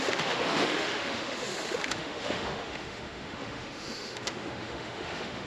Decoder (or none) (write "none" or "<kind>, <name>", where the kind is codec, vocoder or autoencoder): autoencoder, DAC-VAE